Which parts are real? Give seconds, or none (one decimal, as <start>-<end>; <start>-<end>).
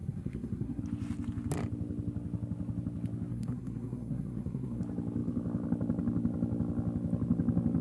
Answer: 0.8-3.3; 4.8-7.8